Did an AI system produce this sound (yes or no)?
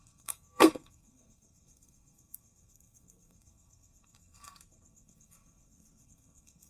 yes